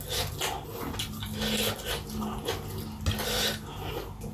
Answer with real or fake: real